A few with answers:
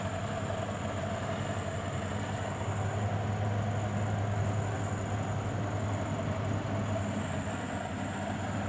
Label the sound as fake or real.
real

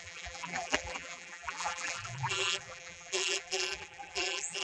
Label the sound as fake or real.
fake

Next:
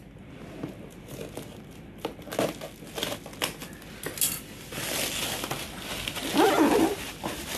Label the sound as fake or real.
real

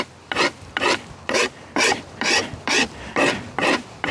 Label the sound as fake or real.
fake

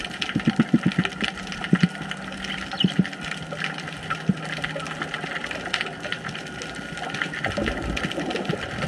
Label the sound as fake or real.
real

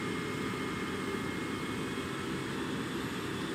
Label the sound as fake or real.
real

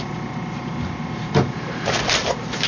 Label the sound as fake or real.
fake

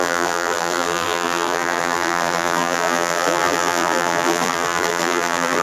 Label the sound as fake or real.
fake